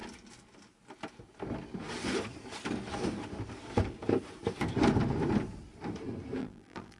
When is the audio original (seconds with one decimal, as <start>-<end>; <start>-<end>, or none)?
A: 0.0-6.4